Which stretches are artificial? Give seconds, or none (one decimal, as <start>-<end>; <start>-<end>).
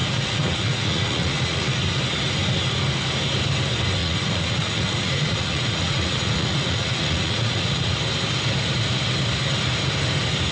0.0-1.8; 4.0-8.0